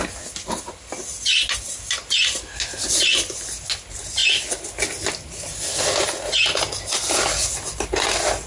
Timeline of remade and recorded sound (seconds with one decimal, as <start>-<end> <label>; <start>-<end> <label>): 0.0-8.5 recorded